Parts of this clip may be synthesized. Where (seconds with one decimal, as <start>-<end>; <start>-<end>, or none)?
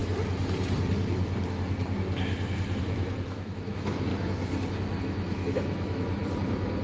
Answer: 2.8-4.1; 5.0-6.2